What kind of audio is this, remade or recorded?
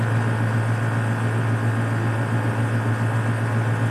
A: recorded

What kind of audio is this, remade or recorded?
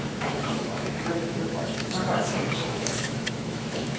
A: remade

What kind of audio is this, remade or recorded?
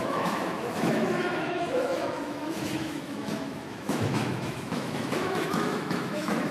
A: remade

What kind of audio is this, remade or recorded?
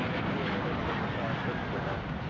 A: recorded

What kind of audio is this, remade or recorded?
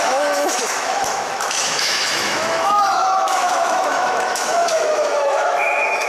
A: remade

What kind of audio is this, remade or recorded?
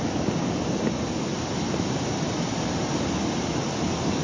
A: recorded